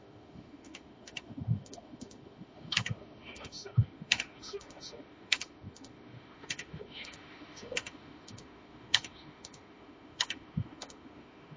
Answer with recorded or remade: remade